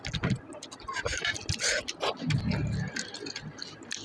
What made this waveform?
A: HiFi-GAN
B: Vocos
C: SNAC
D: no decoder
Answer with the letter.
D